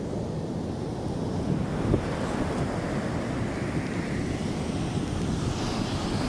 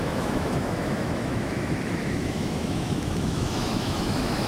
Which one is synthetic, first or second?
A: second